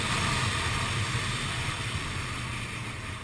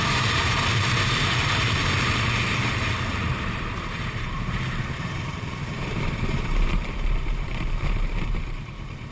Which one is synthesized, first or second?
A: second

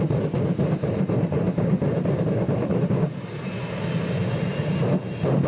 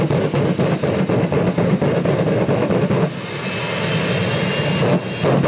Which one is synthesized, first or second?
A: first